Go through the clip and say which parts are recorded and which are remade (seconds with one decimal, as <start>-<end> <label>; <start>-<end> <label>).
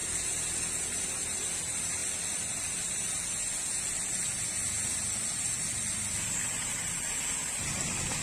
0.0-8.2 recorded